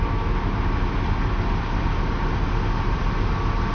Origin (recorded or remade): recorded